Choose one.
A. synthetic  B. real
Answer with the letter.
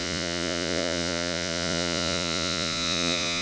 A